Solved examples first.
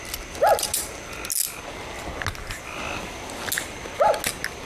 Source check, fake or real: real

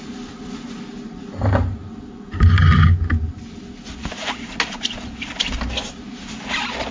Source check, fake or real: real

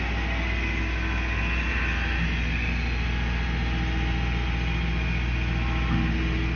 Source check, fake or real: real